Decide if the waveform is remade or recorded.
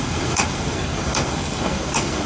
remade